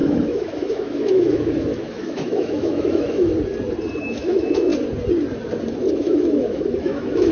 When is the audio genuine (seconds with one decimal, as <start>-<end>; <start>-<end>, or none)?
3.3-4.0; 4.7-5.9